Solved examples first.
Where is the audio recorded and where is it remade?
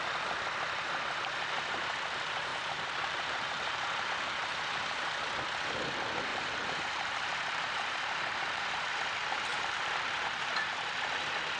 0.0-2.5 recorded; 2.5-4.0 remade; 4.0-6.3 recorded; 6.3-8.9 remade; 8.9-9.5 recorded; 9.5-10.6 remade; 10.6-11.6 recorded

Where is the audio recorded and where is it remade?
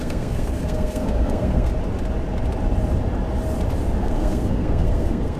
0.0-1.7 remade; 1.7-4.0 recorded; 4.0-5.4 remade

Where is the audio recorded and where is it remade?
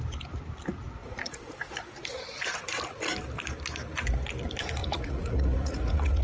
0.0-1.0 recorded; 1.0-1.8 remade; 1.8-4.8 recorded; 4.8-6.2 remade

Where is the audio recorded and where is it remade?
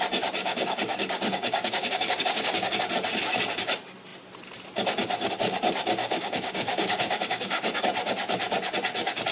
0.0-0.4 recorded; 0.4-2.8 remade; 2.8-6.0 recorded; 6.0-7.8 remade; 7.8-9.3 recorded